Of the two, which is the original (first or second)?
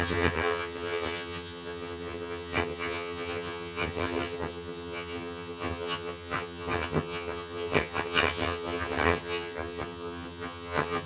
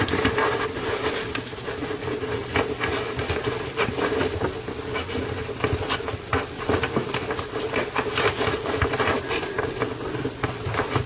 second